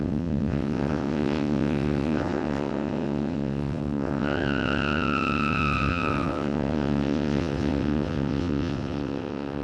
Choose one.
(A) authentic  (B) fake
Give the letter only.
B